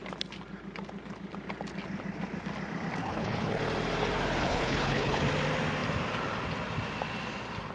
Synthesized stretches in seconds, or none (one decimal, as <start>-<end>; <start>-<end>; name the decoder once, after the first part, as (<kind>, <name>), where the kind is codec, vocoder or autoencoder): 3.0-3.6 (codec, HILCodec); 4.4-5.2